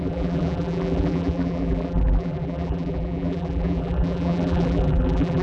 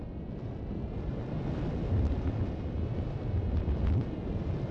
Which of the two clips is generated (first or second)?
first